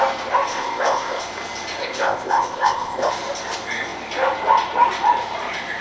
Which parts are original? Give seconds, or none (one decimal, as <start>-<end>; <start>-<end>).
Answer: 0.0-0.5; 1.2-1.8; 3.1-5.8